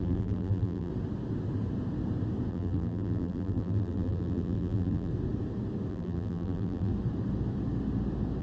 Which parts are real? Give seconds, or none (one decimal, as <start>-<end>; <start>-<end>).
0.9-2.5; 5.1-5.9; 6.9-8.4